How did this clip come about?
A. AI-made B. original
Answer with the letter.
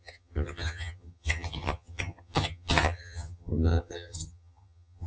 A